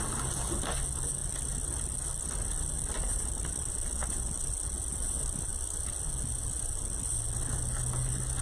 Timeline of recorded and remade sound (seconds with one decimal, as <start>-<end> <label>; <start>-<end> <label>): 0.0-8.4 recorded